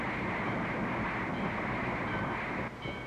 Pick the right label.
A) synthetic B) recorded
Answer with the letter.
B